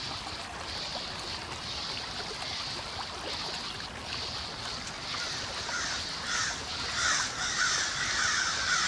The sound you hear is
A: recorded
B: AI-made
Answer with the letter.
A